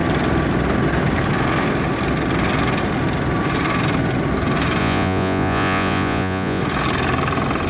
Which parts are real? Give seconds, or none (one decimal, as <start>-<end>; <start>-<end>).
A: 0.0-4.8; 6.6-7.7